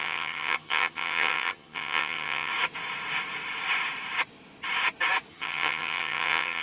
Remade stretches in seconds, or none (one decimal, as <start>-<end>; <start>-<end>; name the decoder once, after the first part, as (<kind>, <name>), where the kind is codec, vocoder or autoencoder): 0.0-2.5 (vocoder, HiFi-GAN); 5.3-6.6